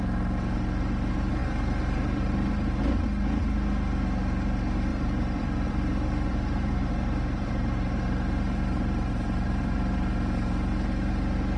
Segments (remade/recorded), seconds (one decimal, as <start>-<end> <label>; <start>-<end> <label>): 0.0-1.4 recorded; 1.4-2.8 remade; 2.8-4.9 recorded; 4.9-10.1 remade; 10.1-11.6 recorded